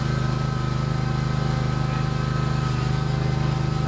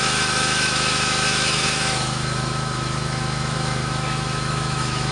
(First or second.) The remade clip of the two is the second